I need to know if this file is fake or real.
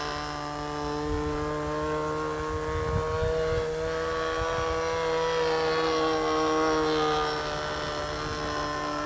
real